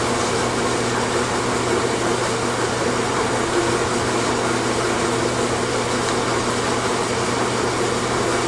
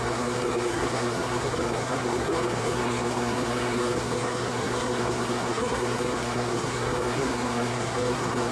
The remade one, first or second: second